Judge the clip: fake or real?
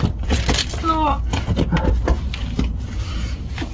real